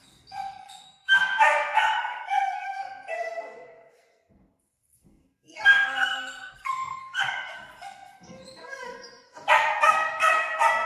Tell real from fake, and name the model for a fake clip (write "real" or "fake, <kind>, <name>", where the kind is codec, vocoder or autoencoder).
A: fake, codec, SNAC